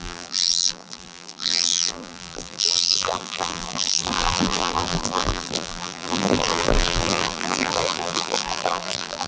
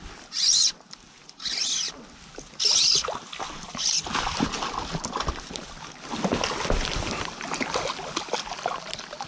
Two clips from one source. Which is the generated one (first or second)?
first